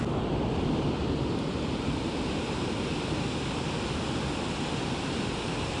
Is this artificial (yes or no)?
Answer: no